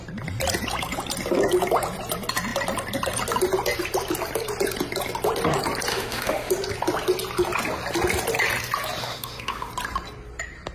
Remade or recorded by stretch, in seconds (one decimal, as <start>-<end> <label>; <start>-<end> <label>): 0.0-5.9 recorded; 5.9-6.5 remade; 6.5-9.0 recorded; 9.0-9.7 remade; 9.7-10.7 recorded